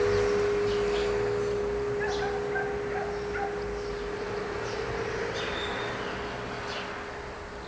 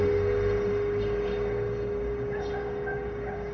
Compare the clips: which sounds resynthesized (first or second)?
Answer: second